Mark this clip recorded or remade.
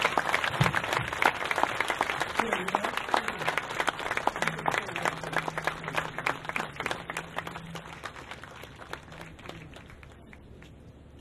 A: recorded